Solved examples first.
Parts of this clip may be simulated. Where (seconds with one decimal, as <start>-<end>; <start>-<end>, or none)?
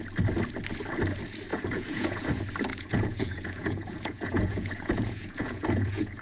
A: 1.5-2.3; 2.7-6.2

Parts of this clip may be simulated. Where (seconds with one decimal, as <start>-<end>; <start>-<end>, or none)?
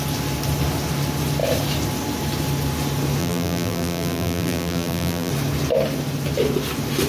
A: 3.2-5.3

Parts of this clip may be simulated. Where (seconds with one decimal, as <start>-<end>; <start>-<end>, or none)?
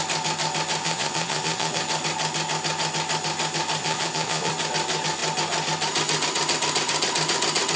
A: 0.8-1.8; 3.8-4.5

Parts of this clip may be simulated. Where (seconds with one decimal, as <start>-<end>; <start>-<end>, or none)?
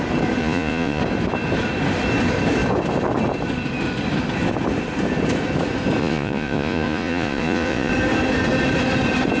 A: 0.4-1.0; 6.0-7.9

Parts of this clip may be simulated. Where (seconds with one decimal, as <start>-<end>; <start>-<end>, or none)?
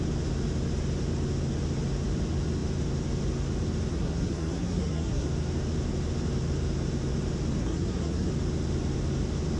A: 3.9-5.3; 7.6-8.3